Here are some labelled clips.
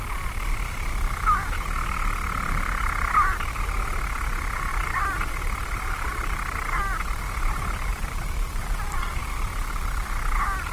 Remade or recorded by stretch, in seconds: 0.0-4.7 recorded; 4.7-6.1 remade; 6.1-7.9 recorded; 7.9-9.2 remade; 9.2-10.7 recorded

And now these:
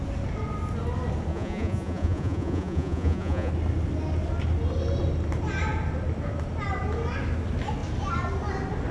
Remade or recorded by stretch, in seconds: 0.0-1.3 recorded; 1.3-3.5 remade; 3.5-8.9 recorded

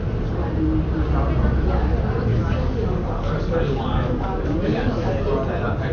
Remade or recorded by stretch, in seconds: 0.0-2.3 recorded; 2.3-5.2 remade; 5.2-5.9 recorded

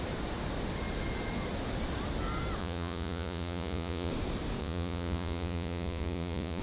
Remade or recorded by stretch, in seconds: 0.0-2.6 recorded; 2.6-4.1 remade; 4.1-4.6 recorded; 4.6-6.6 remade

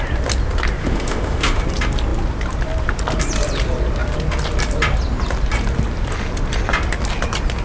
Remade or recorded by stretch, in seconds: 0.0-0.8 recorded; 0.8-1.6 remade; 1.6-7.6 recorded

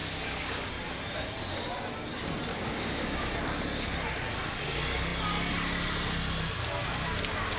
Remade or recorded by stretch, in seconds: 0.0-0.7 remade; 0.7-2.5 recorded; 2.5-3.3 remade; 3.3-7.6 recorded